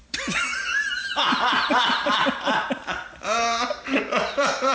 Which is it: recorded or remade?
remade